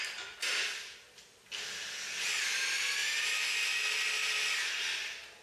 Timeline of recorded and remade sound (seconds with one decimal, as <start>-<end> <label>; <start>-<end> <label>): 0.0-5.4 recorded